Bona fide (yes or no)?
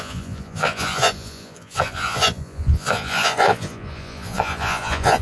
no